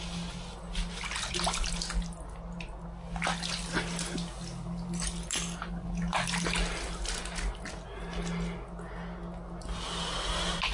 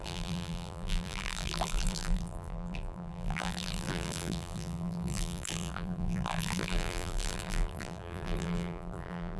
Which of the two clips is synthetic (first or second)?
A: second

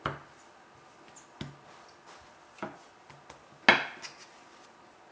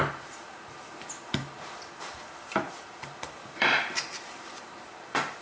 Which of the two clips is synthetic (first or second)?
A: second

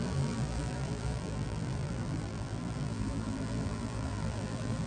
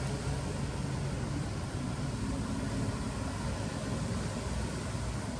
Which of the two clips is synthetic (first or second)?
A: first